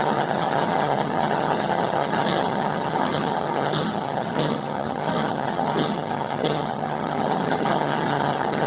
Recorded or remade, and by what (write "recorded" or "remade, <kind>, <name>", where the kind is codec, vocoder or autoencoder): remade, vocoder, HiFi-GAN